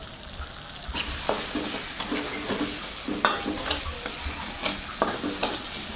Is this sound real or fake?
real